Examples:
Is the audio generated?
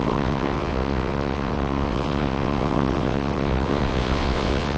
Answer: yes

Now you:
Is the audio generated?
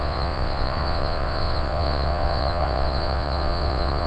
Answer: yes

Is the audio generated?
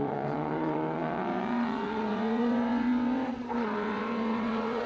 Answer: yes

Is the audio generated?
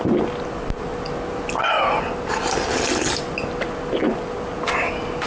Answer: no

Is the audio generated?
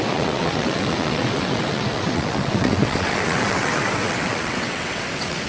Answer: yes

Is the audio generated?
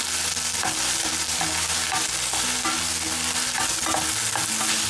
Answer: no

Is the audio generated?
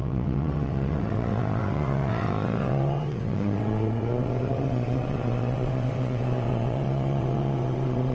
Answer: yes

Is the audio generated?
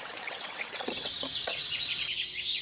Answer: yes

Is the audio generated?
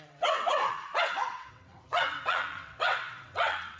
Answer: yes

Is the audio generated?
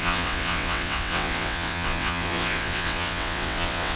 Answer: yes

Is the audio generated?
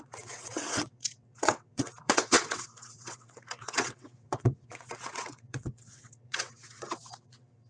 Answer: yes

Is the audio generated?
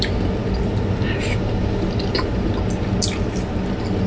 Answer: no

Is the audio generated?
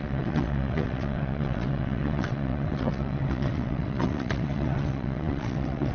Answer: yes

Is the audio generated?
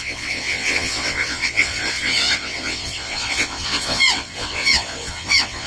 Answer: yes